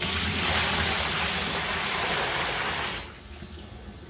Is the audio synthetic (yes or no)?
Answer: no